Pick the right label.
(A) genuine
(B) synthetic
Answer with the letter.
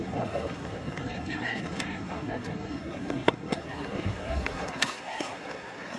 B